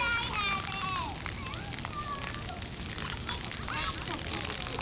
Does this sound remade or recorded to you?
recorded